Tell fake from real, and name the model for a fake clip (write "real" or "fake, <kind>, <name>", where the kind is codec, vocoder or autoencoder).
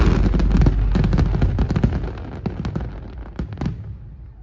real